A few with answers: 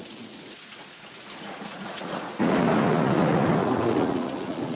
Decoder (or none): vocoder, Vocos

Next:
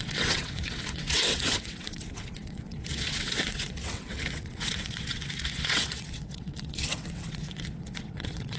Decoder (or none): vocoder, WaveNeXt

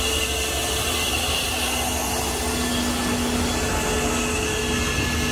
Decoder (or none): none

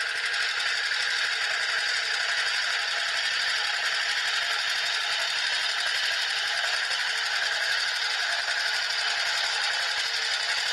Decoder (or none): none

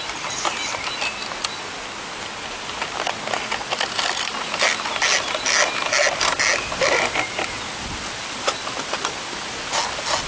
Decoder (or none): none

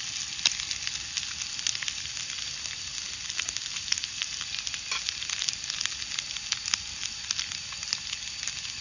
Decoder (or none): none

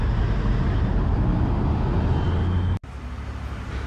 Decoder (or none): none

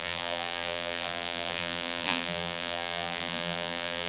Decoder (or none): vocoder, BigVGAN v2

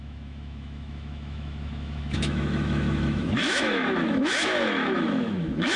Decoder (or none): autoencoder, DAC-VAE